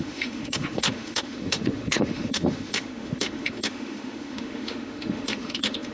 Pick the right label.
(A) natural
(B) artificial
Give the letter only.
B